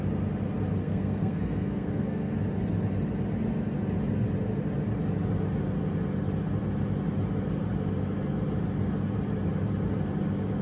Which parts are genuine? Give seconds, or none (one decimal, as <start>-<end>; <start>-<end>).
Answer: 0.0-0.8; 2.3-10.6